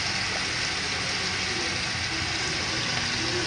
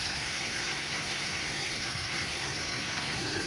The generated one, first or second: second